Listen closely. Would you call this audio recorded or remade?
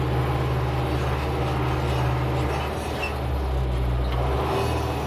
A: recorded